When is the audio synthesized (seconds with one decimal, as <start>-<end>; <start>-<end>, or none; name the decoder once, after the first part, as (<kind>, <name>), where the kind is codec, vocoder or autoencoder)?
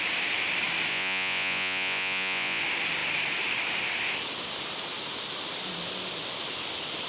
0.9-2.6 (vocoder, Vocos)